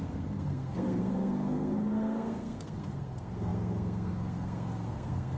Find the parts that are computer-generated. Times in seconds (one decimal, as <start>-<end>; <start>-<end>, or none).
0.0-5.4